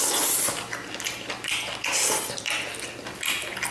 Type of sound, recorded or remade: recorded